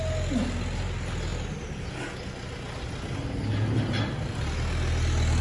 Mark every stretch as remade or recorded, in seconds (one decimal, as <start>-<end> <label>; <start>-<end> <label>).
0.0-5.4 recorded